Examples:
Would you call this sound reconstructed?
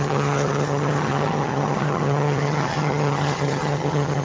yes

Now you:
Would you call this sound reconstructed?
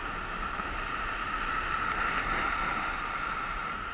no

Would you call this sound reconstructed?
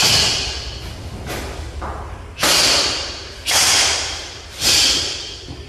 no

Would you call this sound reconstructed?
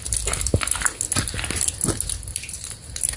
no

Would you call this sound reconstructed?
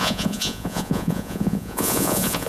yes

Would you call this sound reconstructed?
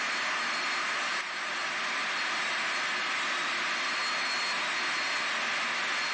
no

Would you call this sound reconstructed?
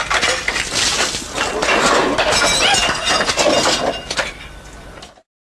no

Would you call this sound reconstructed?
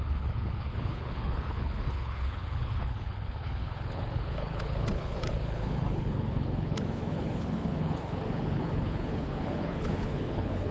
yes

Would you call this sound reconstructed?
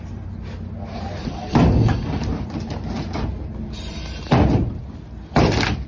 no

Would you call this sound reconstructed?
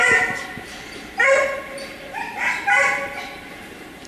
no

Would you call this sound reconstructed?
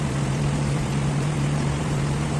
yes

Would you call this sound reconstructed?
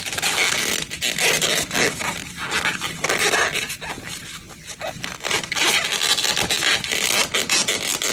no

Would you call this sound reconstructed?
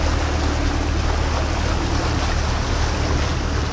no